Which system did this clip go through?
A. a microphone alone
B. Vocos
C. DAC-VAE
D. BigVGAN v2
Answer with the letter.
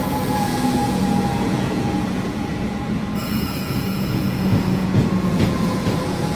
B